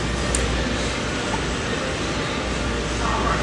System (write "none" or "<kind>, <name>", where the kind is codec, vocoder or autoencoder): none